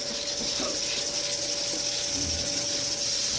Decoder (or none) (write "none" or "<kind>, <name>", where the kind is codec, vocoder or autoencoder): none